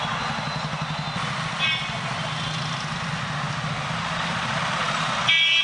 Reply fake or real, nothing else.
real